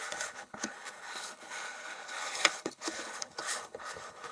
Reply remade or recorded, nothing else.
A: remade